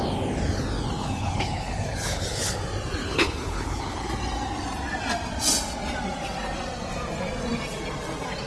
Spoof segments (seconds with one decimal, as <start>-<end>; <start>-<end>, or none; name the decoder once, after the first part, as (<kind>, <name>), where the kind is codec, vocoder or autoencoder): 1.0-2.6 (codec, HILCodec); 3.0-4.1